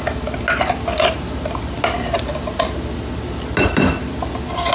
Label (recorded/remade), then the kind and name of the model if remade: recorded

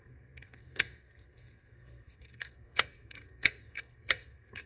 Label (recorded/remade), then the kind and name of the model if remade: remade, codec, SNAC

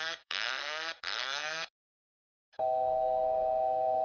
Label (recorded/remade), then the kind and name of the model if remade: remade, codec, SNAC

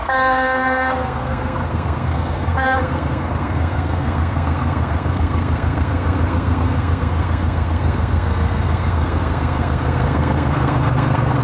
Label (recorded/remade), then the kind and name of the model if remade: remade, codec, SNAC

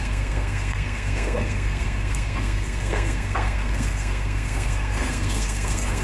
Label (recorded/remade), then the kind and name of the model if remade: remade, codec, SNAC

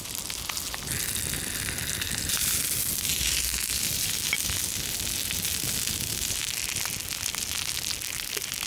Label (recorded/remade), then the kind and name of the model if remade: recorded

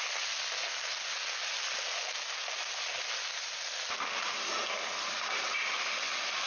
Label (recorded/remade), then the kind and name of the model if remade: recorded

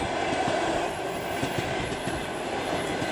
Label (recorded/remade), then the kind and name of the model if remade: recorded